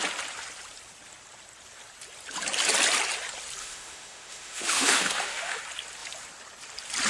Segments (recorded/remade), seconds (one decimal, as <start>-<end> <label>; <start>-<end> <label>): 0.0-3.6 recorded; 3.6-5.6 remade; 5.6-7.1 recorded